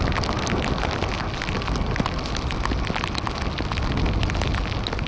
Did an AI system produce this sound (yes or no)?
no